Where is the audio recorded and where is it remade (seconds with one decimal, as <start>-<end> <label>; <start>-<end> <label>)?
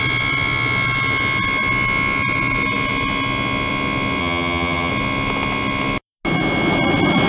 0.0-4.2 recorded; 4.2-4.9 remade; 4.9-7.3 recorded